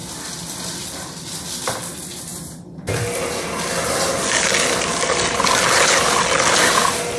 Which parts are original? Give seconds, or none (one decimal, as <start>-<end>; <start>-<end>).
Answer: 0.0-7.2